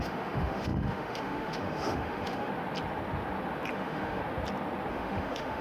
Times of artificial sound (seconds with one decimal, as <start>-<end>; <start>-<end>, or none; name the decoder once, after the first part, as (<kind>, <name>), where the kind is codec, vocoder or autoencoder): 0.0-2.5 (autoencoder, DAC-VAE); 3.7-4.2; 4.9-5.6